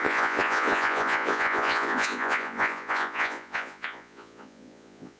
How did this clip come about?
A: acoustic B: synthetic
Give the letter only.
B